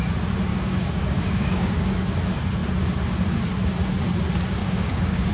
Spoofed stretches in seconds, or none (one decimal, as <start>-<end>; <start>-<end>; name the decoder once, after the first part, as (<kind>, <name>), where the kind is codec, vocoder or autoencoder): 0.5-1.9 (codec, DAC); 4.6-5.3